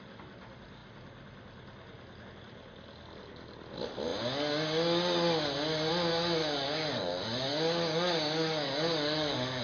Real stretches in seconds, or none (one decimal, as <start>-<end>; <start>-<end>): 0.0-6.4; 7.1-7.5

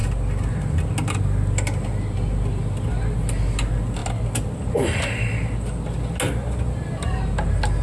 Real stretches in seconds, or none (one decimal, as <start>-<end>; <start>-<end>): 0.0-7.8

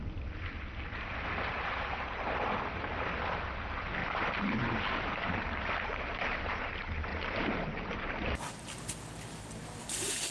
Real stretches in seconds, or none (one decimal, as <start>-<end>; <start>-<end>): 0.0-1.5; 2.0-4.0; 6.6-7.1; 7.9-10.3

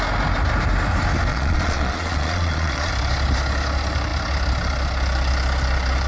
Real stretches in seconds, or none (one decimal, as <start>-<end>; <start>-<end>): 0.0-1.3; 2.9-6.1

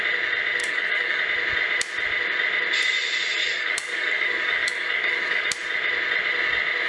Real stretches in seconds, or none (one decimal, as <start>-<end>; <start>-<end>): 0.0-0.6; 1.2-3.4; 5.5-6.9